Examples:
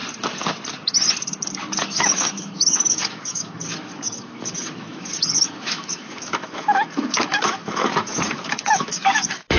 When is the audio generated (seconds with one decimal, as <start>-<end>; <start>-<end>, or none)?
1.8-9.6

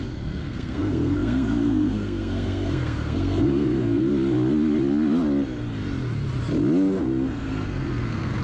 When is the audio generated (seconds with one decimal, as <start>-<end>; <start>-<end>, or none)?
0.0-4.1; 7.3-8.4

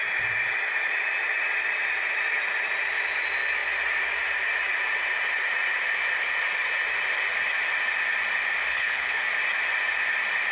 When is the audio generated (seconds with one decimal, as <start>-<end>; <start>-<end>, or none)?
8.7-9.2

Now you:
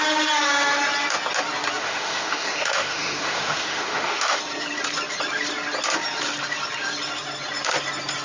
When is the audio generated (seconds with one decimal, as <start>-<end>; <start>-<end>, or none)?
1.8-4.4